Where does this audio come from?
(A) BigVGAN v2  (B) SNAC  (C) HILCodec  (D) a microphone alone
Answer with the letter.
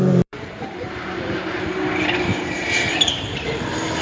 A